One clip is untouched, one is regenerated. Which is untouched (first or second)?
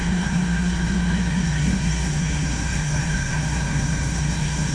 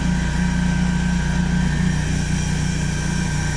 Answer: second